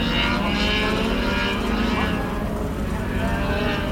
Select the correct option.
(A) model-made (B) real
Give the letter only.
B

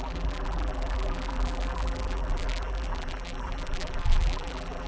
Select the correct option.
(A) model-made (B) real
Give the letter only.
A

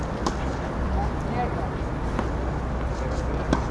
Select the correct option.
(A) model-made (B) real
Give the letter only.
B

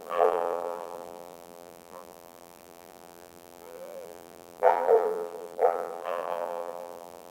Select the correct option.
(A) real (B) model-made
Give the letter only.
B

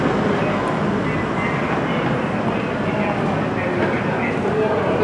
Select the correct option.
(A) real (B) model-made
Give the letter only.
A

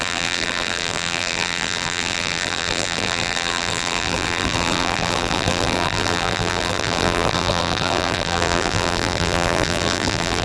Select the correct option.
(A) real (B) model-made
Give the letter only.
B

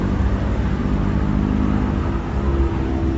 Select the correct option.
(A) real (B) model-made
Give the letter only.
A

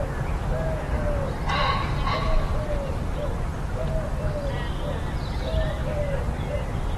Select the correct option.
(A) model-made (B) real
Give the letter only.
B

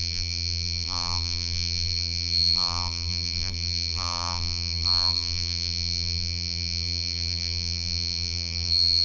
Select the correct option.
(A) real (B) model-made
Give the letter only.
B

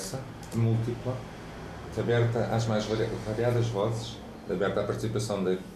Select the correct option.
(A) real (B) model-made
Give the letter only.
A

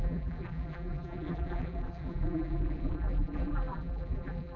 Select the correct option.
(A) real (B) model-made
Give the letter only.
B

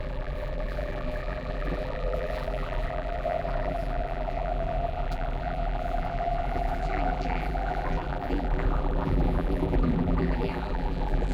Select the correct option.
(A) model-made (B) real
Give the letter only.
A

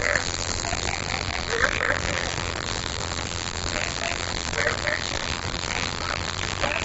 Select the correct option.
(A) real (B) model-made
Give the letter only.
B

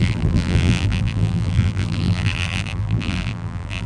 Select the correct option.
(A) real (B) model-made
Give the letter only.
B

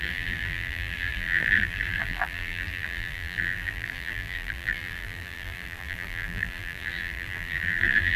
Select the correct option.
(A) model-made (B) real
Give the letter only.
A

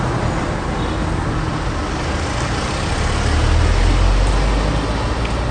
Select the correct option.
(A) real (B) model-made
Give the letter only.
A